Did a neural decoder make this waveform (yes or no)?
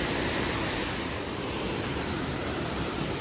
yes